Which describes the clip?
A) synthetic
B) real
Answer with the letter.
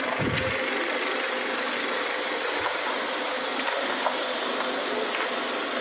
A